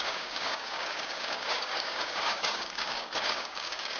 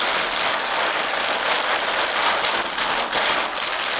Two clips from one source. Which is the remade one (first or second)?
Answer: first